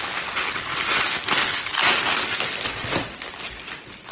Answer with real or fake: real